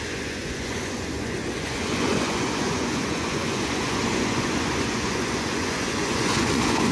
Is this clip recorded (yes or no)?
no